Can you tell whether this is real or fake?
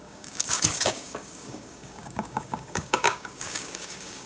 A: fake